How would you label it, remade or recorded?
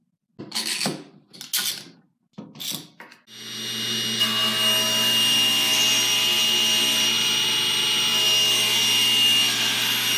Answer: recorded